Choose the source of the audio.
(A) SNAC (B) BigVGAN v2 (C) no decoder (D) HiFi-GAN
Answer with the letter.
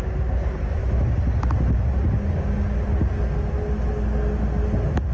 C